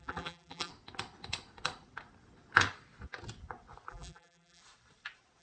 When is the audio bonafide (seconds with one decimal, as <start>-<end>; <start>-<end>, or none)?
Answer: 0.7-3.9; 4.6-5.4